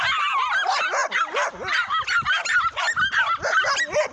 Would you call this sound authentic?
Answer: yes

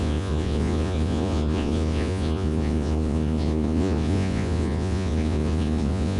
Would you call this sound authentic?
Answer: no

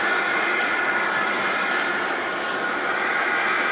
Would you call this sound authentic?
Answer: yes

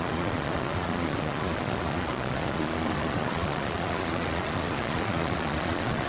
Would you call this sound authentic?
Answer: no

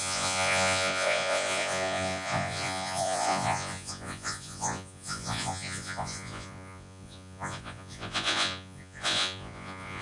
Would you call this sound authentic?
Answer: no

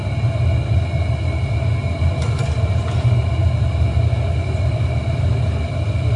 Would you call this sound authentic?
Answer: yes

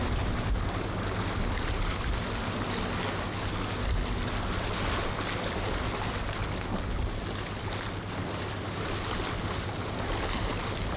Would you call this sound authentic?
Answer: yes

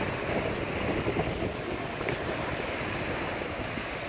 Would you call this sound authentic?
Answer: yes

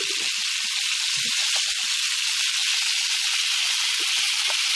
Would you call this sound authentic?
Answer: yes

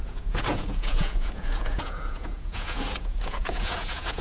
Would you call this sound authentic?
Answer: no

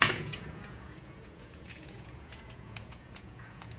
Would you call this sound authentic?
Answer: no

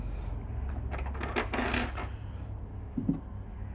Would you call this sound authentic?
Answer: yes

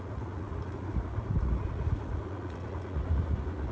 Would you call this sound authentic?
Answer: no